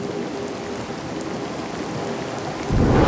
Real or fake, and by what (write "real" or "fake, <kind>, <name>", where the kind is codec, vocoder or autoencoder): real